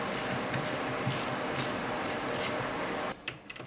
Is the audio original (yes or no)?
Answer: yes